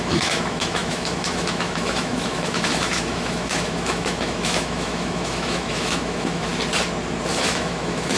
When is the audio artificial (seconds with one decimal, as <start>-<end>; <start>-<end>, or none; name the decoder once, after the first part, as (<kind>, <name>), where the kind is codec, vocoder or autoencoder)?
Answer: 0.0-6.5 (autoencoder, DAC-VAE); 7.3-8.2